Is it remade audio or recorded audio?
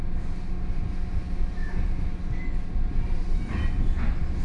recorded